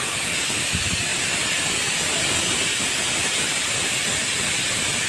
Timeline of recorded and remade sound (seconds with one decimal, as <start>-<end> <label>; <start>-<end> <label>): 0.0-5.1 recorded